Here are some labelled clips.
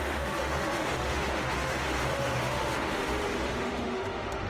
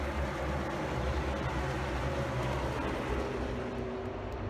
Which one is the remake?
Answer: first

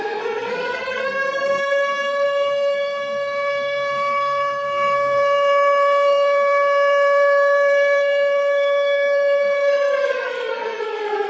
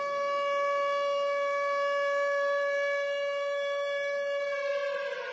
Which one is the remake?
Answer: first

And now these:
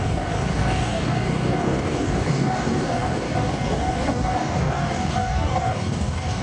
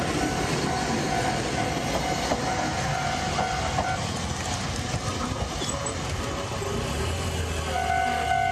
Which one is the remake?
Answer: first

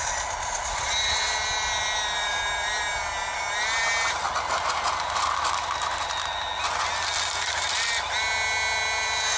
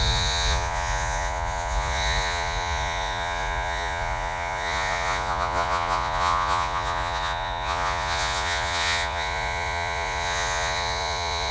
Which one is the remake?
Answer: second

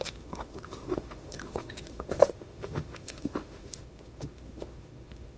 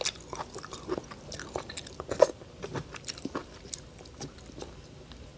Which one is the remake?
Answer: first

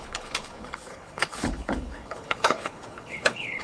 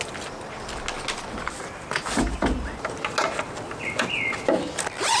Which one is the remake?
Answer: first